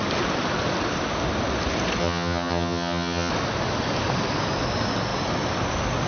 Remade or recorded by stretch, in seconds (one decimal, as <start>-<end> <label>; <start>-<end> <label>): 0.0-2.0 recorded; 2.0-3.3 remade; 3.3-6.1 recorded